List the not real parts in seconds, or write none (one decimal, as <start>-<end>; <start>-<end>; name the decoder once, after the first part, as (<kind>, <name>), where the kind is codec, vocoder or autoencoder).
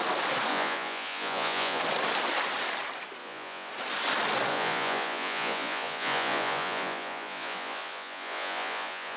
0.5-1.8 (vocoder, Vocos); 3.2-3.7; 4.5-9.2